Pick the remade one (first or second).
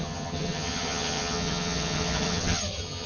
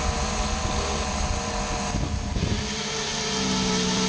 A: first